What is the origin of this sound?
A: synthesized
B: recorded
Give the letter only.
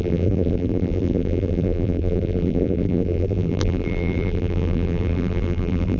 A